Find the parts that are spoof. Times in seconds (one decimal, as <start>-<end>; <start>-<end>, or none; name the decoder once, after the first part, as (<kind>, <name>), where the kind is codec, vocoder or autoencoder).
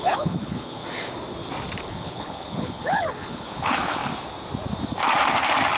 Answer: 0.0-0.8 (codec, HILCodec); 1.8-4.0